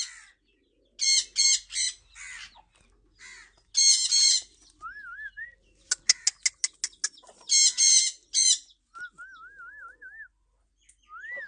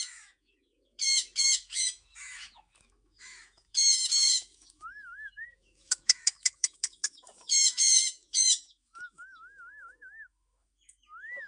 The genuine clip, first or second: first